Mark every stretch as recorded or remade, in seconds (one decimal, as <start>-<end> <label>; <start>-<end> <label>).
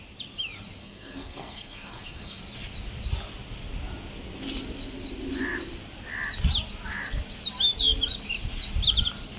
0.0-0.8 recorded; 0.8-2.4 remade; 2.4-9.4 recorded